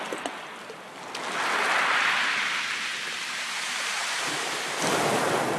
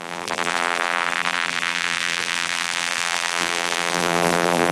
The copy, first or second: second